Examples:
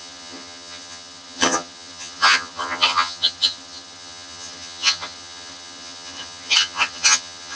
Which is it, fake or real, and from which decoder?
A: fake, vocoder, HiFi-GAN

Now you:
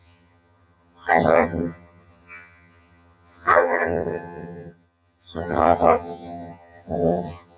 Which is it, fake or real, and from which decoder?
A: fake, vocoder, HiFi-GAN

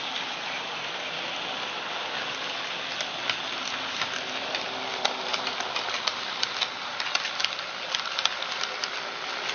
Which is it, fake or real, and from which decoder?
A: real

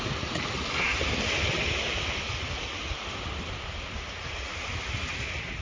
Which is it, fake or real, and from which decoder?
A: real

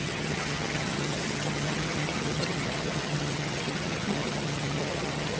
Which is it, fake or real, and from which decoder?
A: fake, vocoder, HiFi-GAN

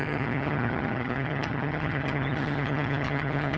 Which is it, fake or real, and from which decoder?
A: fake, vocoder, HiFi-GAN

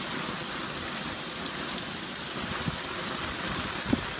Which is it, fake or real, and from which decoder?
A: real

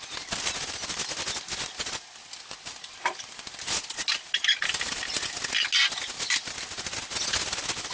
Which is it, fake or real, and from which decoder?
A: real